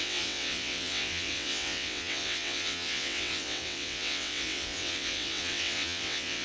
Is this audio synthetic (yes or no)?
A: yes